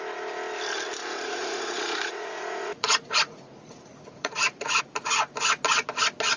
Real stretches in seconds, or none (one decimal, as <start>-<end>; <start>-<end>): 0.0-1.0; 4.8-6.4